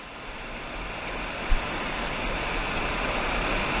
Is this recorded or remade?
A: recorded